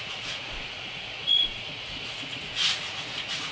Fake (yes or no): yes